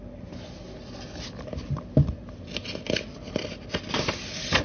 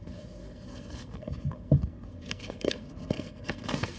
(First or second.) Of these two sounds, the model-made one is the second